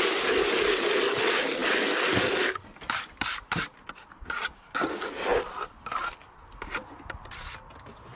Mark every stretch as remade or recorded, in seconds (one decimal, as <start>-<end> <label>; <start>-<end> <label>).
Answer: 0.0-8.2 recorded